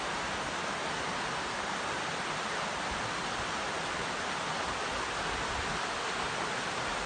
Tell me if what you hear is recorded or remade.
recorded